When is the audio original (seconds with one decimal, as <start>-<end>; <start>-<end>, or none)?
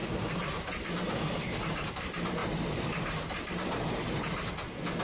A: 1.9-2.4; 4.5-5.0